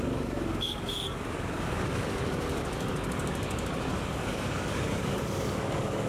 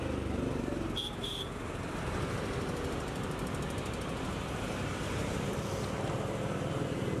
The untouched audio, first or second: second